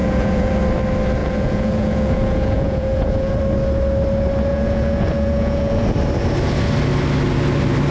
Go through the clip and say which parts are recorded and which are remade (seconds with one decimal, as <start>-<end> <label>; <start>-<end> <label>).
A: 0.0-0.5 remade; 0.5-1.2 recorded; 1.2-3.4 remade; 3.4-4.5 recorded; 4.5-5.8 remade; 5.8-7.9 recorded